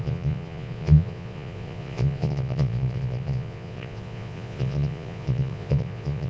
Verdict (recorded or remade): remade